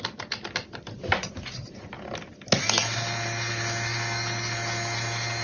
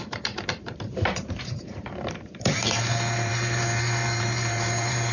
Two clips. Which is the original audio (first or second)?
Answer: first